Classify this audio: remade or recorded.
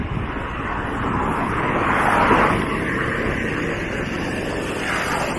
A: remade